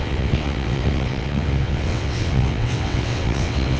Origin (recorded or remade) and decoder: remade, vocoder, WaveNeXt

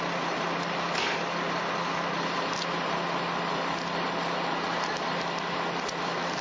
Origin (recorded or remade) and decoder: recorded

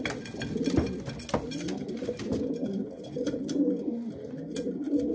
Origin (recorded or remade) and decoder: recorded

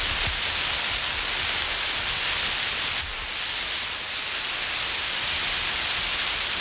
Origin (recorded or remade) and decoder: recorded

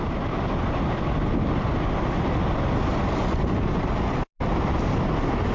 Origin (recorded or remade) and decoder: recorded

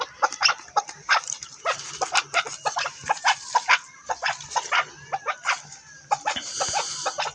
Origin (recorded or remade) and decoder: recorded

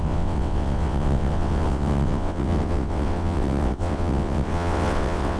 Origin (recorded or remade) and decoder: remade, vocoder, WaveNeXt